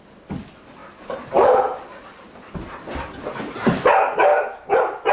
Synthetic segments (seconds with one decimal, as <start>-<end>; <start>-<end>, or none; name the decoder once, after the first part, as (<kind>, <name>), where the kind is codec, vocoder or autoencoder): 4.3-5.1 (vocoder, BigVGAN v2)